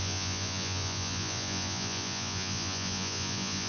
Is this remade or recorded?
remade